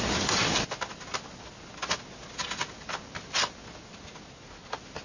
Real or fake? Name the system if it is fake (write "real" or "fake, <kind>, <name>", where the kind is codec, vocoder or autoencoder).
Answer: real